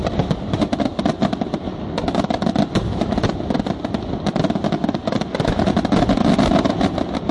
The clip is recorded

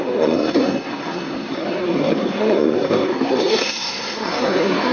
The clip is remade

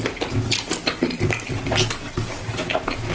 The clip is recorded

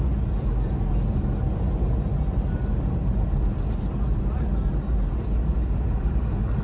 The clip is recorded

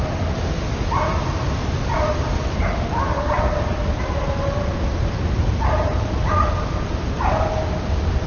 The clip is recorded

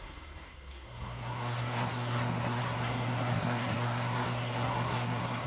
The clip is remade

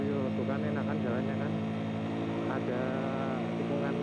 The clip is recorded